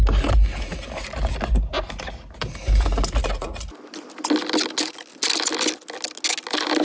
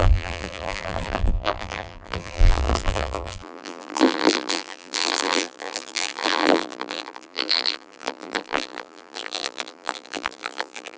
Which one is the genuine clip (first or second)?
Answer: first